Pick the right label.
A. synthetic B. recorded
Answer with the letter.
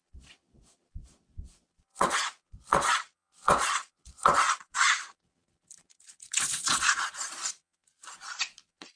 A